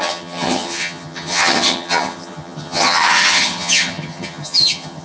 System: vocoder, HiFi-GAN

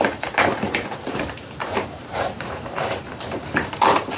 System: vocoder, BigVGAN v2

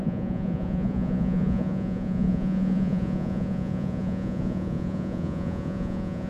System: vocoder, Vocos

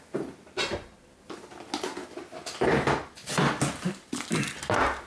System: none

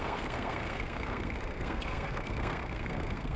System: codec, SNAC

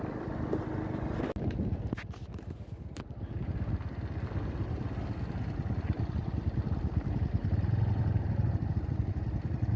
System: none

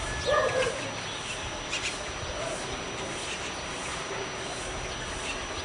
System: none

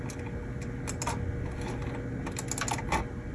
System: none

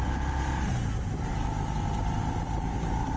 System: none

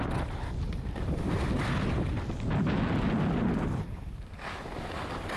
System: none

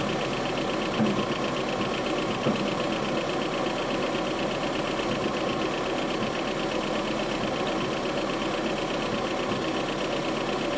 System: none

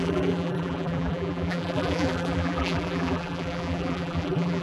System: vocoder, BigVGAN v2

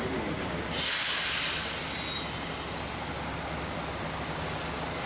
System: none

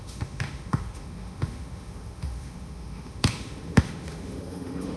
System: autoencoder, DAC-VAE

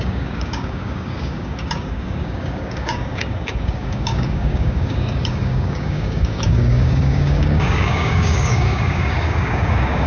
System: codec, DAC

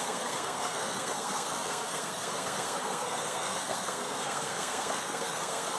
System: codec, SNAC